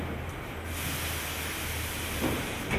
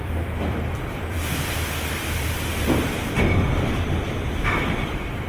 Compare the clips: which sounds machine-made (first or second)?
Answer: second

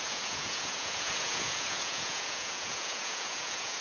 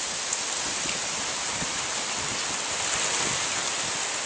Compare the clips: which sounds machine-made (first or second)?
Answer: first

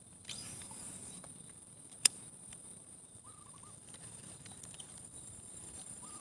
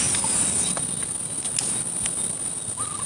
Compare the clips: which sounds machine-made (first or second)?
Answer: first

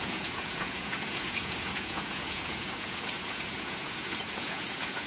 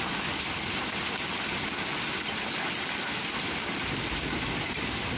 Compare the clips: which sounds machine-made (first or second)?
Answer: first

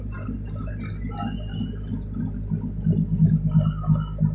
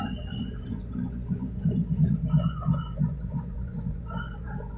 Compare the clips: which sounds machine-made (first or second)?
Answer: second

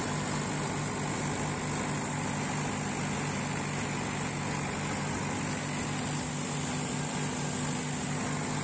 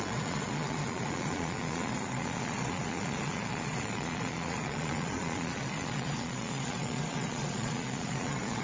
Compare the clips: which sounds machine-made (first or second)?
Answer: second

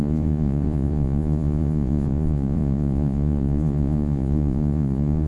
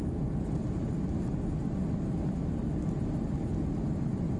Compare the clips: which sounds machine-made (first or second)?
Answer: first